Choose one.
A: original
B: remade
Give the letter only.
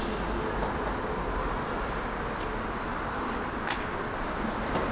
A